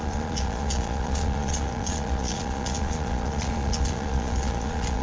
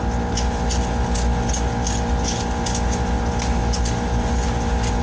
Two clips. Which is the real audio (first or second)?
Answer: second